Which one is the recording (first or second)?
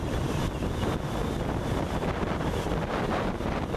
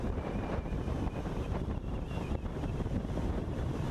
first